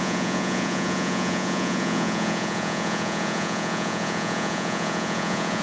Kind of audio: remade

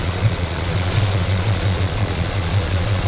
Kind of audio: remade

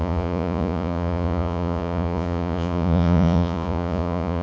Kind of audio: remade